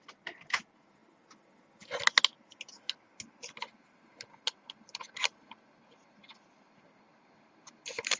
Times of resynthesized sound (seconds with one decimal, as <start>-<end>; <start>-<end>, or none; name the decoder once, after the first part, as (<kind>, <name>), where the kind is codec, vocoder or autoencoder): none